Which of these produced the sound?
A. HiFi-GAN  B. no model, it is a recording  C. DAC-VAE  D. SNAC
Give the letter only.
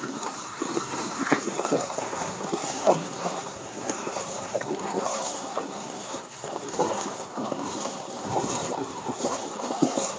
D